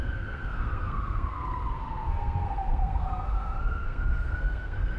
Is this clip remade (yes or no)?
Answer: yes